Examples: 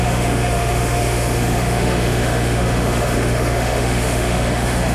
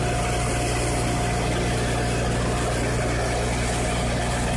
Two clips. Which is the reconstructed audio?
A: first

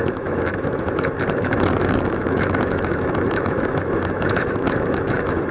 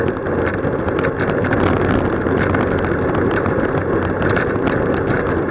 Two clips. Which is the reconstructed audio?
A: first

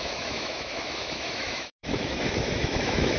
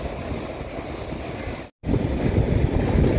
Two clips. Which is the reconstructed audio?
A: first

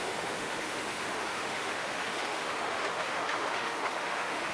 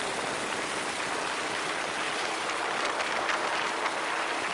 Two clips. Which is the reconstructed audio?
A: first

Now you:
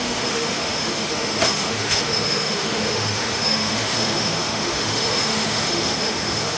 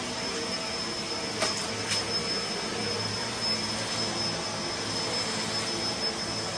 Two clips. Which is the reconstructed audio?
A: first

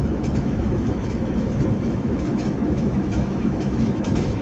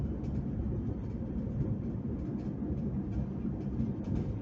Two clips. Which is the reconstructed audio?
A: first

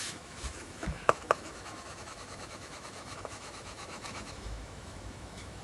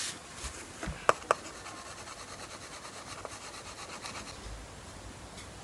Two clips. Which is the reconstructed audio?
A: first